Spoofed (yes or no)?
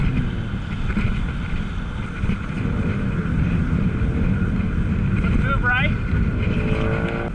no